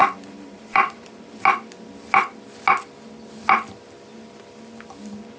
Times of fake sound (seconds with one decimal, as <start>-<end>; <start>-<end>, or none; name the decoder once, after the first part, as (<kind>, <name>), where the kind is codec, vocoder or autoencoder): 0.0-1.3 (vocoder, BigVGAN v2)